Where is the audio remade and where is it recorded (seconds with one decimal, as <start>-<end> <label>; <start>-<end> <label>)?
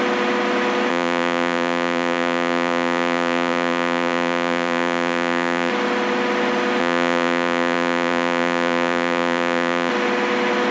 0.0-0.9 recorded; 0.9-5.7 remade; 5.7-6.8 recorded; 6.8-9.9 remade; 9.9-10.7 recorded